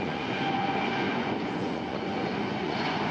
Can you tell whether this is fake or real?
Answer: fake